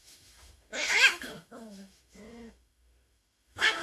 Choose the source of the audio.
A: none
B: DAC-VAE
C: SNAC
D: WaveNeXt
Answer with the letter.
B